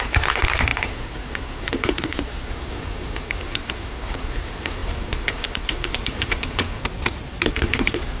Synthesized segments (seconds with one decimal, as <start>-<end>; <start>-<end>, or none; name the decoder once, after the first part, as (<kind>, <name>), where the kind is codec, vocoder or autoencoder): 0.0-6.8 (codec, SNAC); 7.5-8.2